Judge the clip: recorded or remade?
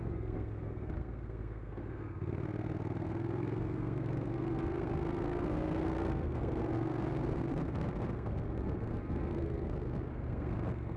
remade